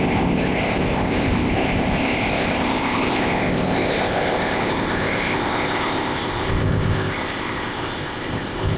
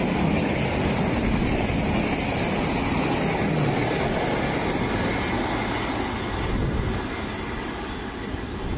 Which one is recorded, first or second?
second